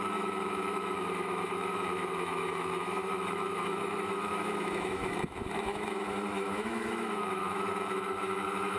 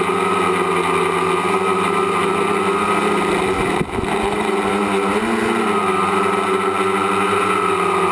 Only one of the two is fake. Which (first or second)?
first